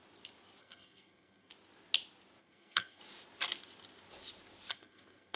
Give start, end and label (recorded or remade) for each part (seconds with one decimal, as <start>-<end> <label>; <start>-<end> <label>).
0.0-0.6 recorded; 0.6-1.5 remade; 1.5-2.4 recorded; 2.4-3.0 remade; 3.0-4.7 recorded; 4.7-5.4 remade